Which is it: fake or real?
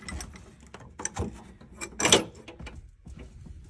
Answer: real